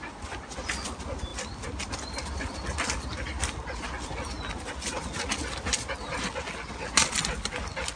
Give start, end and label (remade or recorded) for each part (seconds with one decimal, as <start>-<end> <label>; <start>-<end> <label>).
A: 0.0-8.0 recorded